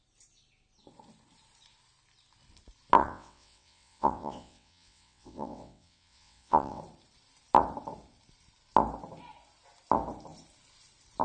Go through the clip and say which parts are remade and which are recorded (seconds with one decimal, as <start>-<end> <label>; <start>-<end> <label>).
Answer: 0.0-3.0 recorded; 3.0-6.8 remade; 6.8-11.2 recorded